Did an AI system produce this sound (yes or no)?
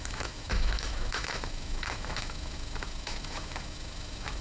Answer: yes